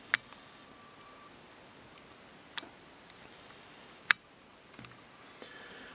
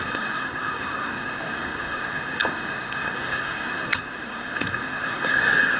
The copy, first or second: second